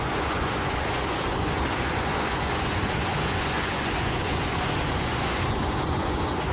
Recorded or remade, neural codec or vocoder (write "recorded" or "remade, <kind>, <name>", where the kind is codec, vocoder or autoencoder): remade, vocoder, Vocos